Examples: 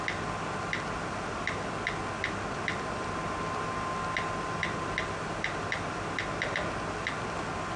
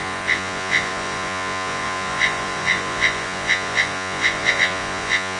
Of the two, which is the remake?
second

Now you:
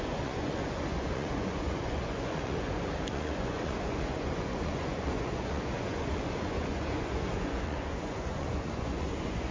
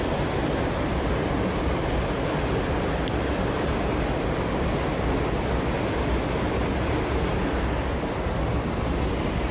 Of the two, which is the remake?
first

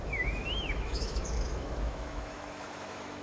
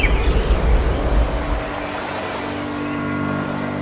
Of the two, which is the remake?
first